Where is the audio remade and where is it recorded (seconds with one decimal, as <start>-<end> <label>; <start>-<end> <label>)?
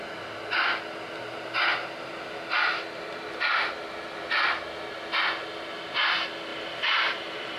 0.0-6.5 recorded; 6.5-7.6 remade